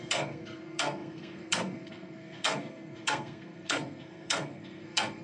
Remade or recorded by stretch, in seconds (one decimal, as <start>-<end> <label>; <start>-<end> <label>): 0.0-5.2 remade